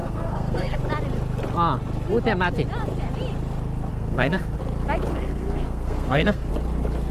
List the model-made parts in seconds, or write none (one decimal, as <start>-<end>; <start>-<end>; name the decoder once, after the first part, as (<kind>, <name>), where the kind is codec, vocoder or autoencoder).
0.0-0.8 (codec, SNAC); 3.9-4.6; 5.1-6.5